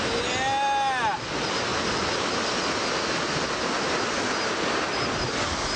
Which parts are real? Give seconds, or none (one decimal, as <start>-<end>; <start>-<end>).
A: 0.0-5.8